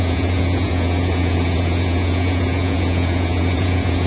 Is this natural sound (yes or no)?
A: no